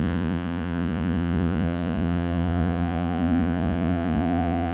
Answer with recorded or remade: remade